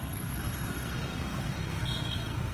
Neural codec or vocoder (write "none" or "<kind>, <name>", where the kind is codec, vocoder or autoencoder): codec, SNAC